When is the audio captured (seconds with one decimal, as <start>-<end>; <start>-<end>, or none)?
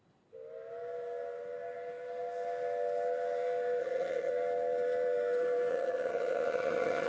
0.0-3.8; 4.3-5.7